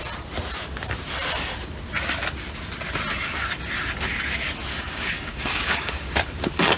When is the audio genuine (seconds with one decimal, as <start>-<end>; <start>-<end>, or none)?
0.0-4.7; 6.0-6.8

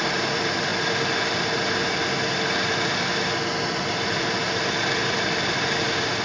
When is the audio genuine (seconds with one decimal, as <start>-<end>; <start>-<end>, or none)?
0.0-6.2

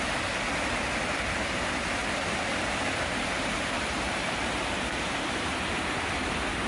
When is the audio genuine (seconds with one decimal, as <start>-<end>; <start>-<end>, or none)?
0.0-2.0; 6.0-6.7

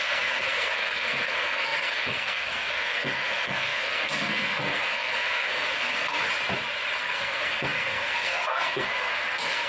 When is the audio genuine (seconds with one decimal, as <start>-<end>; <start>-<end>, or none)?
6.2-7.0

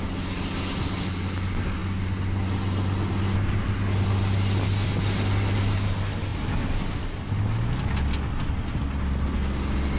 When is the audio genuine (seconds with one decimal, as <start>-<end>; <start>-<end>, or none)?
0.0-10.0

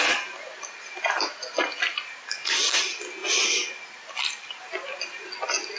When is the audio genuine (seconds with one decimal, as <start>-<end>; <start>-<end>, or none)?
0.0-5.8

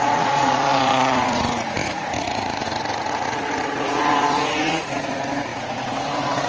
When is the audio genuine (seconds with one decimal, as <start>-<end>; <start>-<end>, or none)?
none

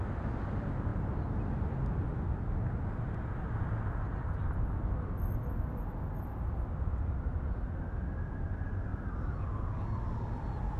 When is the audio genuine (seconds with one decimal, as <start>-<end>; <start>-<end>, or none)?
0.0-8.9; 9.4-10.8